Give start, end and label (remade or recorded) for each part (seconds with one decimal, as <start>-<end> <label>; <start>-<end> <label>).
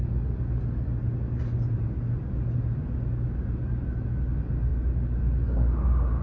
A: 0.0-6.2 recorded